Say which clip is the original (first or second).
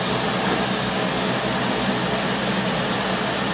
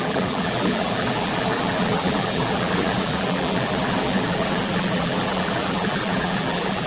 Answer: first